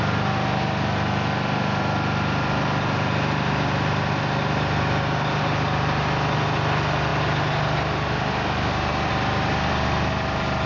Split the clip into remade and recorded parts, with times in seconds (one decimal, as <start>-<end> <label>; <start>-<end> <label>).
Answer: 0.0-10.7 recorded